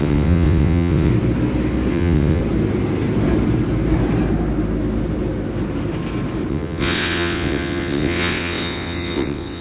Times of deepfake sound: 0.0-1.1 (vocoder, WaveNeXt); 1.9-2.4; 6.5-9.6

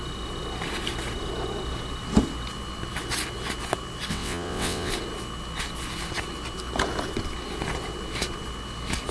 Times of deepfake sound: 4.1-4.9 (vocoder, WaveNeXt)

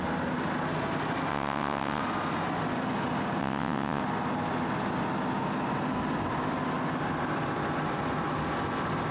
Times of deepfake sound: 1.3-2.0 (vocoder, WaveNeXt); 3.4-4.0

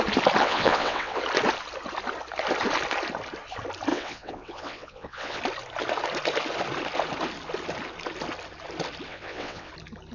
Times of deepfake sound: 0.4-1.2 (vocoder, WaveNeXt); 3.9-5.4; 9.1-9.7

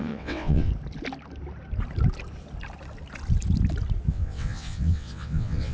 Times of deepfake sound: 0.0-0.7 (vocoder, WaveNeXt); 4.1-5.7

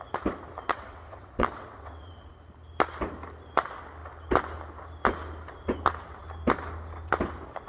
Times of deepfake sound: 0.6-2.3 (vocoder, WaveNeXt)

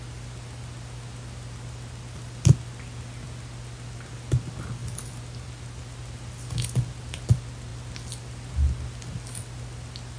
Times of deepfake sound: none